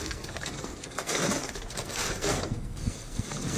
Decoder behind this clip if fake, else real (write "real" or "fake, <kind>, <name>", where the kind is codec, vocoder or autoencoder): fake, codec, SNAC